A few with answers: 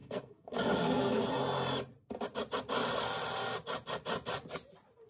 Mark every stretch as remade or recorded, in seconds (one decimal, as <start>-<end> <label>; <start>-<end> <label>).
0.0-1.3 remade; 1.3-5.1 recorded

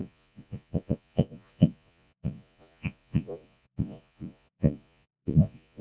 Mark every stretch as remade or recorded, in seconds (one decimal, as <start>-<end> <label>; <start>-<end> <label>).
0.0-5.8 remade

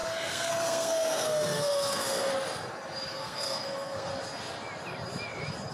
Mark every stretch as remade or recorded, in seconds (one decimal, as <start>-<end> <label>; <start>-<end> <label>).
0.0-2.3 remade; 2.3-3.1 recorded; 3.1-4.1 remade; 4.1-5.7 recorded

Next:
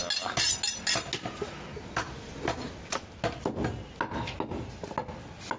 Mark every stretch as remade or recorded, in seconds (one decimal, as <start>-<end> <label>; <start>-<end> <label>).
0.0-5.6 recorded